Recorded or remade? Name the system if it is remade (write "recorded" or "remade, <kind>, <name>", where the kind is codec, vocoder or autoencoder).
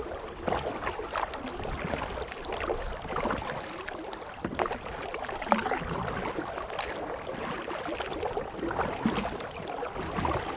recorded